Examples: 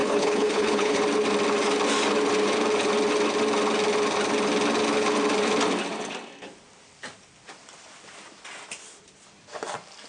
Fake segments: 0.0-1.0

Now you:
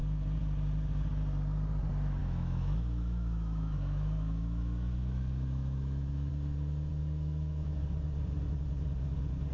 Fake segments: 2.2-6.3; 6.9-7.8

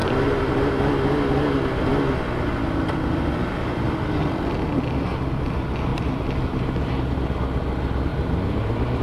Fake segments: 0.0-0.7; 5.9-6.9; 8.1-9.0

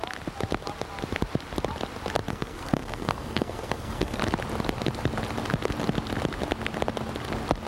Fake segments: 2.3-4.2

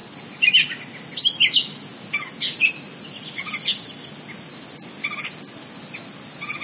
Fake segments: none

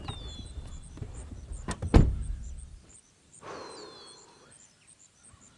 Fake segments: none

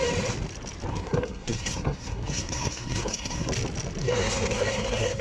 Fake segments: 0.9-3.5; 4.0-5.2